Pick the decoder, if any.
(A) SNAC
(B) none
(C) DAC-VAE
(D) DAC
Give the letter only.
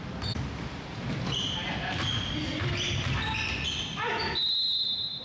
B